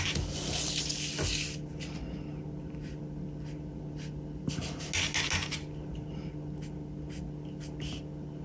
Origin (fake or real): real